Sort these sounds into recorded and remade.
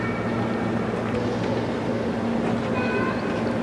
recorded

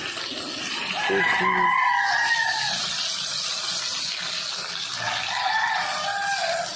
recorded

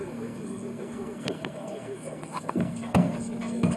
remade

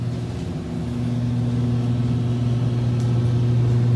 recorded